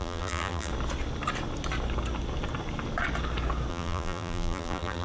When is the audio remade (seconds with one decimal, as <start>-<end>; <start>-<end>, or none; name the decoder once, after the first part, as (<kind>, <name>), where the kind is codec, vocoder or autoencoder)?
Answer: 0.0-0.7 (vocoder, BigVGAN v2); 3.7-5.0